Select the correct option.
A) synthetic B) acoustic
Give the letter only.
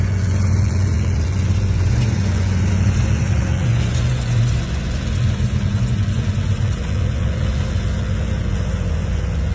A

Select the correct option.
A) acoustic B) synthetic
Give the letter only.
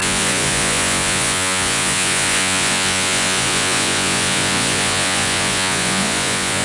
B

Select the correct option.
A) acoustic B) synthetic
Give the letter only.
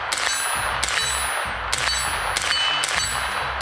A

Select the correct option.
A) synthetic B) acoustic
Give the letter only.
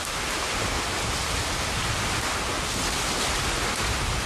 B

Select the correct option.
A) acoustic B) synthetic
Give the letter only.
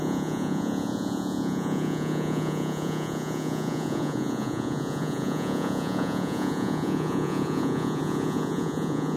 B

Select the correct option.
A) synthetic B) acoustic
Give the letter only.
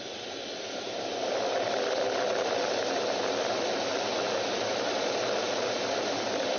B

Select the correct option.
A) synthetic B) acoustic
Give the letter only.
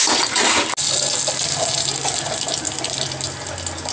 B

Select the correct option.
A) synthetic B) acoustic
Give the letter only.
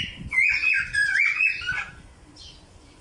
A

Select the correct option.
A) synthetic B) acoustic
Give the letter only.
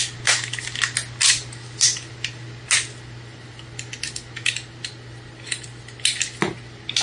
B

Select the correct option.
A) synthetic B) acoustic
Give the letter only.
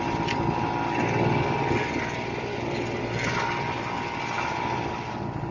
B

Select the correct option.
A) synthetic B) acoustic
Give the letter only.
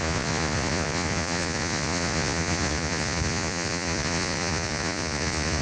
A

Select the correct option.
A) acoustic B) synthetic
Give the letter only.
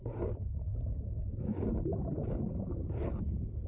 A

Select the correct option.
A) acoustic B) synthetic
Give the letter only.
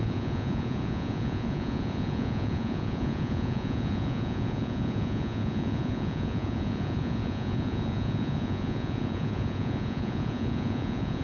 B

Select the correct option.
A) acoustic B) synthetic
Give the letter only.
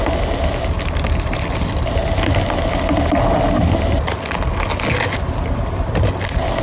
A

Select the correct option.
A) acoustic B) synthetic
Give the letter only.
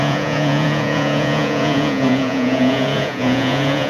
B